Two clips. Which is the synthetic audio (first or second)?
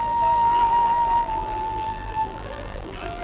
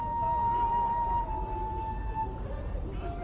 first